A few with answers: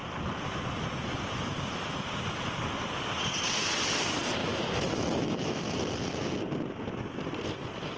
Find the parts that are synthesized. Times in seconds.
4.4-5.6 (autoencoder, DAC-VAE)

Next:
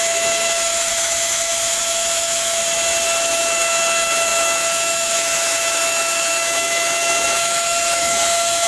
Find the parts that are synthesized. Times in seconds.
0.0-2.6 (autoencoder, DAC-VAE); 3.2-8.7

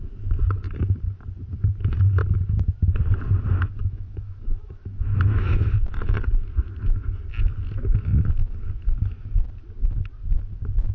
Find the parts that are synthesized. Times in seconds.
3.8-5.7 (autoencoder, DAC-VAE)

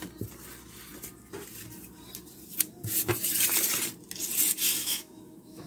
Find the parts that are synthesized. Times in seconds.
4.8-5.7 (autoencoder, DAC-VAE)

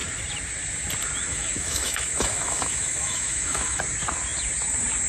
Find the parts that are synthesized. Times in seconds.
1.3-3.8 (autoencoder, DAC-VAE)

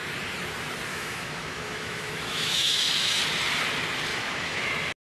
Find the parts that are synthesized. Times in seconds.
0.9-3.2 (autoencoder, DAC-VAE); 4.1-4.6